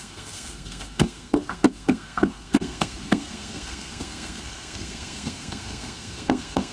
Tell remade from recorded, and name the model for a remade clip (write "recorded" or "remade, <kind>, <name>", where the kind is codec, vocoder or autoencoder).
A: remade, codec, SNAC